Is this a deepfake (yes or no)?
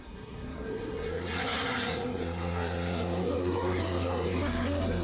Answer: yes